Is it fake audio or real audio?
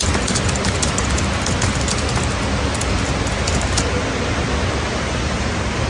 real